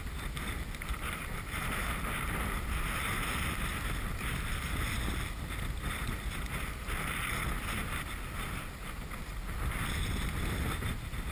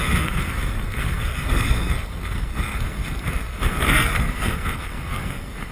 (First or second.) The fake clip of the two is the second